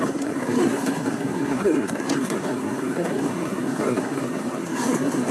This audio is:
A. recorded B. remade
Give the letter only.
B